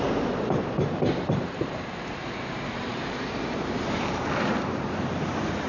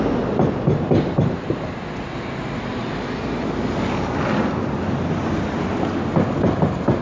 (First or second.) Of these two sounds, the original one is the second